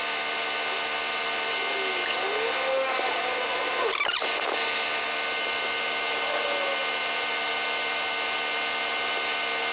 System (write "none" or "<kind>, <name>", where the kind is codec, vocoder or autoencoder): none